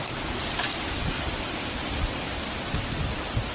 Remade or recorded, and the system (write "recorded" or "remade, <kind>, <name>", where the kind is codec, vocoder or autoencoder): recorded